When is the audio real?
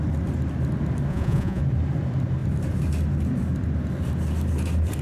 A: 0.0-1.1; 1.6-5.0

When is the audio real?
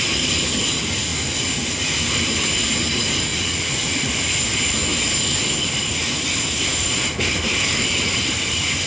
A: 0.0-3.3; 4.1-8.9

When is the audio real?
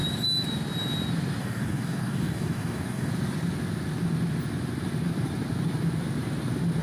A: 0.0-1.4; 3.1-6.8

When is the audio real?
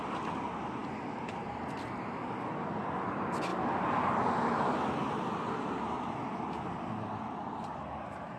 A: 0.0-8.4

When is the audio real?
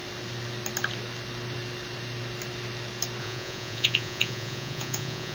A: 0.0-3.2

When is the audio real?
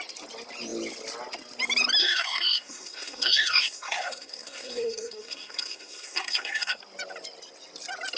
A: 0.0-2.0; 6.8-8.2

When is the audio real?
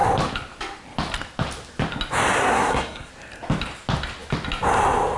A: 0.0-2.4; 3.1-5.2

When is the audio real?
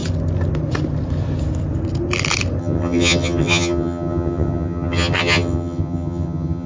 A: 0.0-2.6